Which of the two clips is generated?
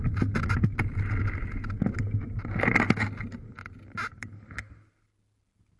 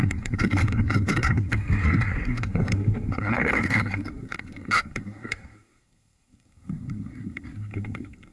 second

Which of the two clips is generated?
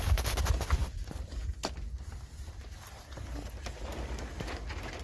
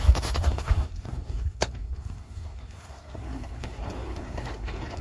second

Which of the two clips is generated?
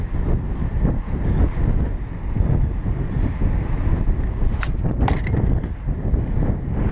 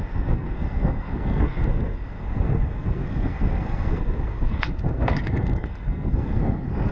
second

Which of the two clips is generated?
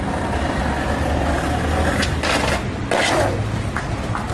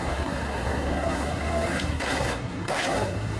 second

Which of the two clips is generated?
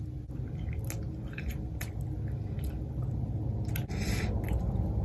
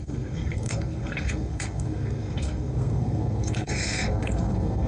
second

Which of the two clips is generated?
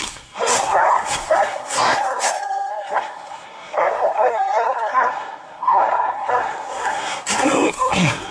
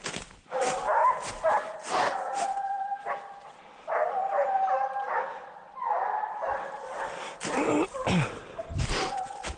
first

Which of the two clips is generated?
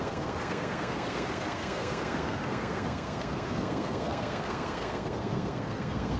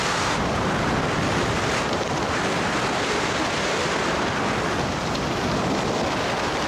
first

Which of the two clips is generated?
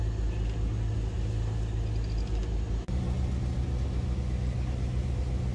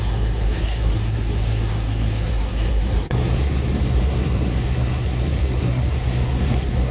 second